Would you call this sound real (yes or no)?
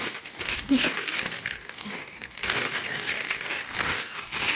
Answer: no